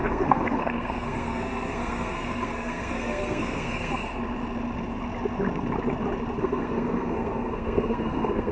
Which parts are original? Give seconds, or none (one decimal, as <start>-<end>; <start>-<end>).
4.1-6.4

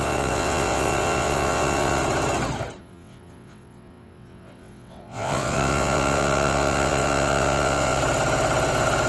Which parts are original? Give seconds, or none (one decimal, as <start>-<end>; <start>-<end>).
2.0-2.8; 8.0-9.1

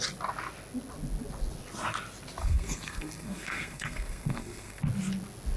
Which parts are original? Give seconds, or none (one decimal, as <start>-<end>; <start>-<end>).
0.0-2.4; 4.8-5.6

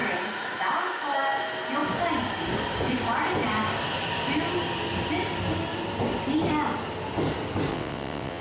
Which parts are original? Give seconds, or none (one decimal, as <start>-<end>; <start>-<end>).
0.0-7.7